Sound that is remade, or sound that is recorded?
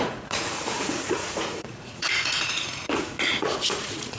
remade